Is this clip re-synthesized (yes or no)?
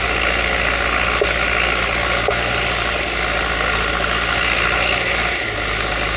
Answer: no